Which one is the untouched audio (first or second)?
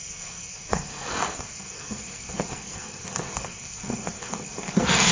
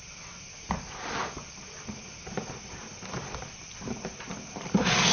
second